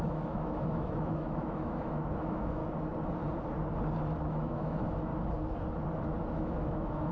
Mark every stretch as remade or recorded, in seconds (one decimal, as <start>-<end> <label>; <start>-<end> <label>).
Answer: 0.0-2.6 remade; 2.6-4.3 recorded; 4.3-5.1 remade; 5.1-6.3 recorded; 6.3-7.1 remade